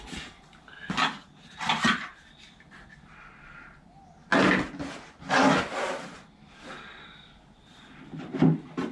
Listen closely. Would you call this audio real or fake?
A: real